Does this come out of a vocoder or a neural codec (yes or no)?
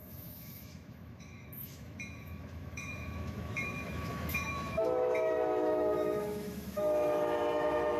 yes